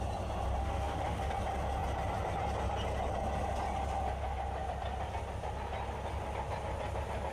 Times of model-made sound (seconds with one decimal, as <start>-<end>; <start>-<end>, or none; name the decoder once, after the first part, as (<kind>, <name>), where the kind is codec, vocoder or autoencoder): 0.6-1.3 (autoencoder, DAC-VAE)